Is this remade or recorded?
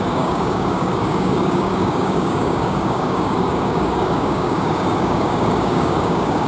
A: remade